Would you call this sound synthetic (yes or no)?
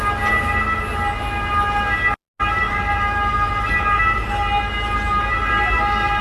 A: no